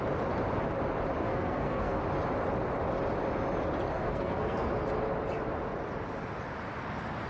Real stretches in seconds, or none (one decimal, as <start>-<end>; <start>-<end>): 0.0-1.2; 2.0-3.9; 4.7-7.3